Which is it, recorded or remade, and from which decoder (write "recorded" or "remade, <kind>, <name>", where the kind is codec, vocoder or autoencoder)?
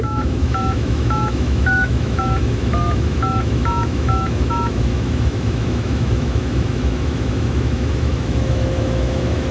remade, autoencoder, DAC-VAE